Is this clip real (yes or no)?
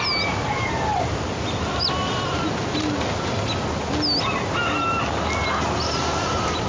yes